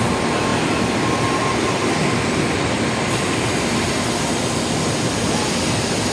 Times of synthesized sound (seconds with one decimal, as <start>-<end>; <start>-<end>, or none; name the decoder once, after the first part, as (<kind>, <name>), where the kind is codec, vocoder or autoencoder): none